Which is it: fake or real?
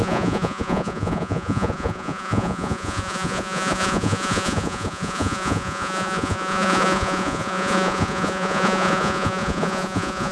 fake